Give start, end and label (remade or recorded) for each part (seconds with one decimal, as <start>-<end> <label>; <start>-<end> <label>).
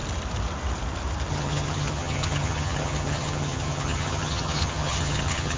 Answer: 0.0-1.3 recorded; 1.3-5.6 remade